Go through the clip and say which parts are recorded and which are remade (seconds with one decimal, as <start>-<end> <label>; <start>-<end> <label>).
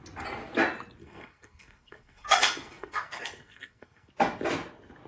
0.0-1.0 recorded; 1.0-4.1 remade; 4.1-5.1 recorded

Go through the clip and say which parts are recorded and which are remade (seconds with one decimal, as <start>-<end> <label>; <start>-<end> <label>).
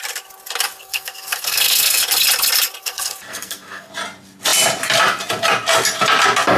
0.0-0.8 recorded; 0.8-2.0 remade; 2.0-2.8 recorded; 2.8-3.9 remade; 3.9-6.6 recorded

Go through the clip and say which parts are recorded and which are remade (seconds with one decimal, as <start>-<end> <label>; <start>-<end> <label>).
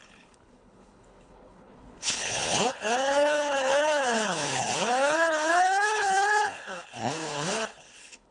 0.0-8.3 remade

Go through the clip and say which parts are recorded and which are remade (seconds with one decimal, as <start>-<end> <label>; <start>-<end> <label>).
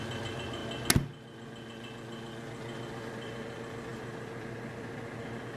0.0-5.6 recorded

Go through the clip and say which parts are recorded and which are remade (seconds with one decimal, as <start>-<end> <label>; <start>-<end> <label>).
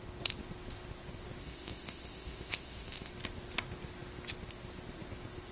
0.0-1.4 recorded; 1.4-3.1 remade; 3.1-5.5 recorded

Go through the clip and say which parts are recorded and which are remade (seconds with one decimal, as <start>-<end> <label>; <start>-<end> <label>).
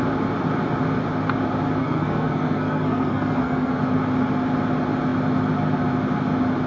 0.0-1.8 recorded; 1.8-3.8 remade; 3.8-6.7 recorded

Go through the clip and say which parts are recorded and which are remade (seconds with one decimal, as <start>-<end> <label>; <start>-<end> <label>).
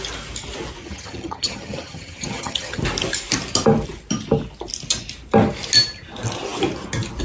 0.0-0.8 recorded; 0.8-2.8 remade; 2.8-7.2 recorded